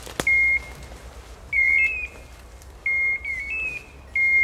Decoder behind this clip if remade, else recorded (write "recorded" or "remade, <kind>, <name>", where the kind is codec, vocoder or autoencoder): recorded